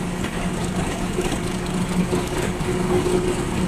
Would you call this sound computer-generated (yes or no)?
yes